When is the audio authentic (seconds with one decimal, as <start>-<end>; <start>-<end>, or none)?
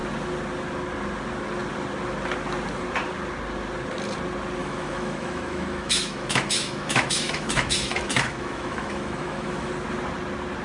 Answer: 0.0-4.6; 9.7-10.6